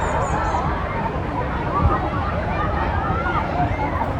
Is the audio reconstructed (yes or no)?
no